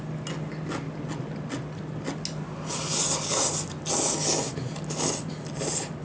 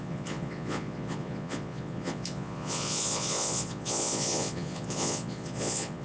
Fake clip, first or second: second